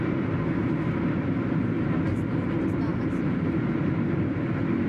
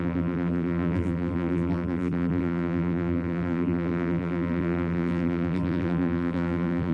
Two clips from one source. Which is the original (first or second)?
first